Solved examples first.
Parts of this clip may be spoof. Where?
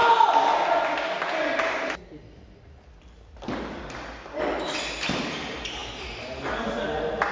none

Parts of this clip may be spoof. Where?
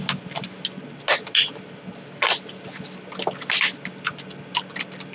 none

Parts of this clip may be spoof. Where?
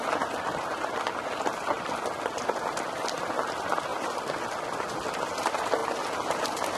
3.9-4.9 (vocoder, BigVGAN v2)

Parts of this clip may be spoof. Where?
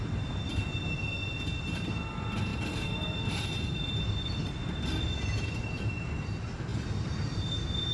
none